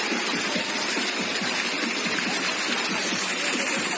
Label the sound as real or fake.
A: real